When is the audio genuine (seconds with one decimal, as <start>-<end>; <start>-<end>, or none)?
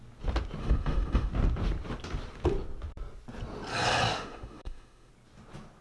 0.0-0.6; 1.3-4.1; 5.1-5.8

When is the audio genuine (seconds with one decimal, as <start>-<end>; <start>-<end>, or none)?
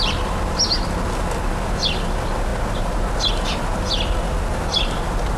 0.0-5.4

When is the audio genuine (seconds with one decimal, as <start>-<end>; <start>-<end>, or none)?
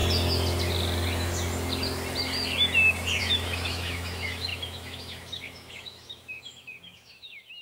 0.0-3.2